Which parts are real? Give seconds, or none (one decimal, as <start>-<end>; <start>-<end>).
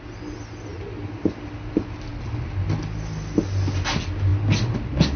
0.0-5.2